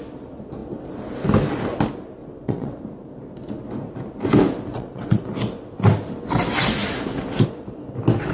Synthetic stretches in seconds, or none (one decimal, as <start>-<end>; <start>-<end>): 2.2-2.8; 4.7-5.2